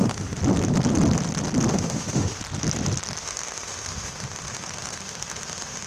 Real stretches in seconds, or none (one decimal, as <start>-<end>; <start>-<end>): 0.4-1.7; 2.4-3.2